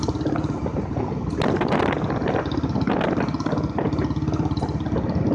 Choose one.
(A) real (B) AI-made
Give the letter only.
A